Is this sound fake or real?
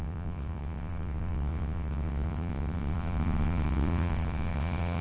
fake